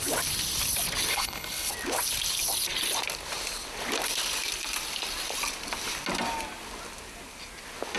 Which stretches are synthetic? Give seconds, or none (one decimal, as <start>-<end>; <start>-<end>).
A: 1.1-1.7